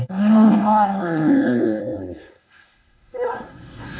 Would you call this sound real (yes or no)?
no